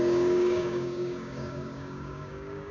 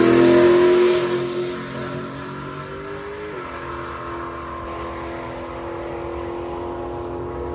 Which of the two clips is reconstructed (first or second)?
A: first